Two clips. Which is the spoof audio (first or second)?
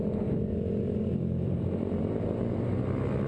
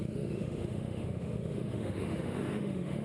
second